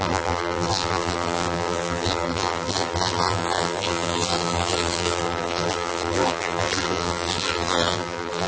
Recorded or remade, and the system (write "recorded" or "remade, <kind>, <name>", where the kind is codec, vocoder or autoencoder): remade, vocoder, BigVGAN v2